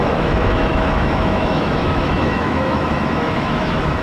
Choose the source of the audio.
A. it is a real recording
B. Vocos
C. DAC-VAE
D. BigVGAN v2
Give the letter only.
C